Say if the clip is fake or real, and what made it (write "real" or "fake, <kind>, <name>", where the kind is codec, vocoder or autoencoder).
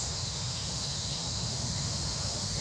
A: fake, autoencoder, DAC-VAE